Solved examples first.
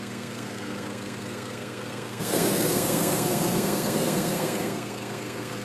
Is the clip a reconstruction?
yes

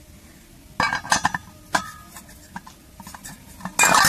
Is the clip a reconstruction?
no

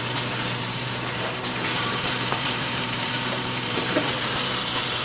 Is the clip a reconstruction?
yes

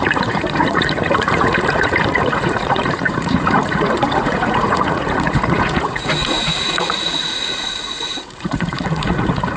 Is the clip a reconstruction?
yes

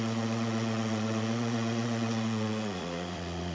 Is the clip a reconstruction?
yes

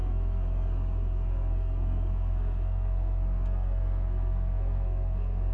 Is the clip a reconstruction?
yes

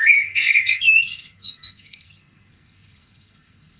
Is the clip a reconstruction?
yes